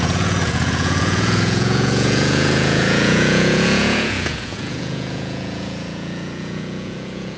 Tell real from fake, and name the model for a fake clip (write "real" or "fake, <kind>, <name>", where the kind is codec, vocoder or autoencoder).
fake, vocoder, Vocos